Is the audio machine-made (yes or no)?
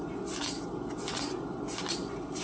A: no